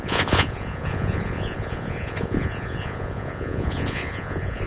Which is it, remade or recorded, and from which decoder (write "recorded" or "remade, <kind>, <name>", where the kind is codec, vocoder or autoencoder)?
remade, vocoder, Vocos